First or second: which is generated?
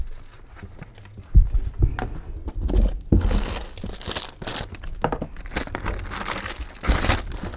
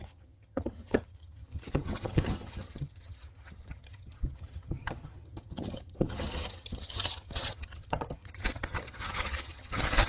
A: second